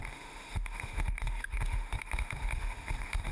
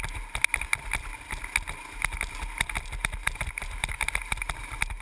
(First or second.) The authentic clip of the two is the second